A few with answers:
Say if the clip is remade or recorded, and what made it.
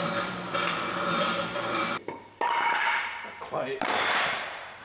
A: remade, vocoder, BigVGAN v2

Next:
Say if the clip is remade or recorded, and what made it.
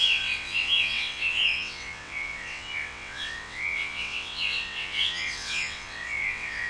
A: remade, vocoder, WaveNeXt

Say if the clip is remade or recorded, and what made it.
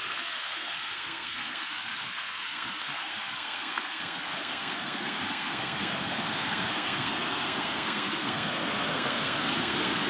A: remade, codec, SNAC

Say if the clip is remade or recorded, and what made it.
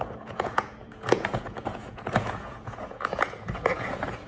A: remade, vocoder, Vocos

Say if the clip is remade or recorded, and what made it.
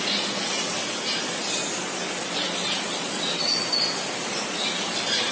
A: recorded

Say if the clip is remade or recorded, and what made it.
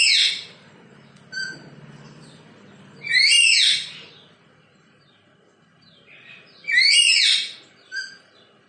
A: recorded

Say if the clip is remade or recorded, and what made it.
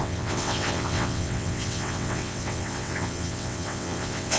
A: remade, vocoder, WaveNeXt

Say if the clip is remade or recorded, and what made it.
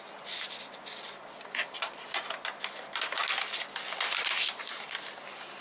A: recorded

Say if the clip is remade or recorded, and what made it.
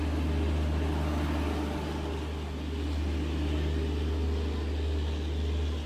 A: recorded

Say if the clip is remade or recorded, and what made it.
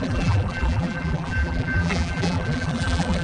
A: remade, vocoder, BigVGAN v2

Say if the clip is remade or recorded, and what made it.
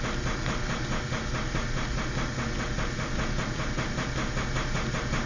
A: recorded